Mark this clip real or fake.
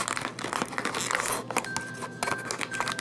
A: real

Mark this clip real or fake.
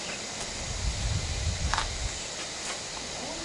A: real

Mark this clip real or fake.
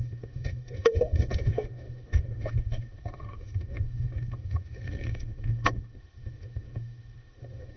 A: fake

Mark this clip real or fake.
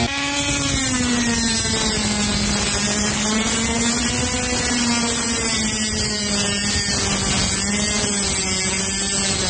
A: real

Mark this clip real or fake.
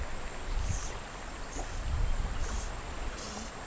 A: real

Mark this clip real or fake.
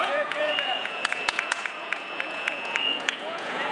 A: fake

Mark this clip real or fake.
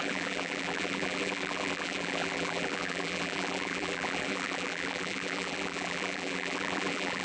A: fake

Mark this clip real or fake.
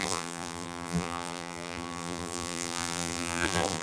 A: fake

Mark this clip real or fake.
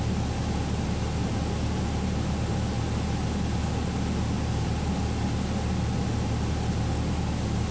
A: real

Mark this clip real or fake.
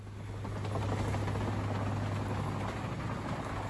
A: real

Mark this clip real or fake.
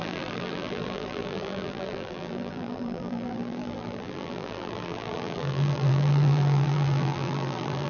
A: fake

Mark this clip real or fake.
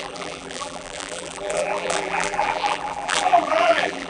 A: fake